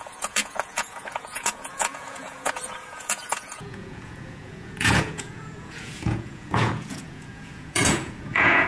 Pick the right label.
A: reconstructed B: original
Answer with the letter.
A